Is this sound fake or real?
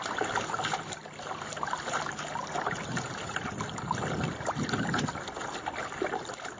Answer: real